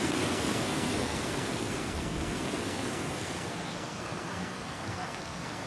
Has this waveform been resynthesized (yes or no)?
yes